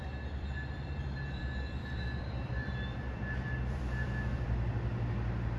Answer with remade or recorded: remade